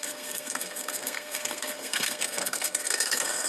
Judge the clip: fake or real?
fake